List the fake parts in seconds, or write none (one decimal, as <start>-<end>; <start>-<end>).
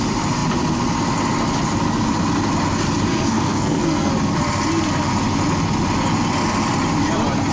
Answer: 3.1-4.1